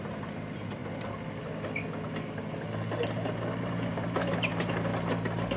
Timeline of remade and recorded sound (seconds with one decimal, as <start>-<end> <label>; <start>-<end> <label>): 0.0-0.8 remade; 0.8-3.6 recorded; 3.6-4.9 remade; 4.9-5.6 recorded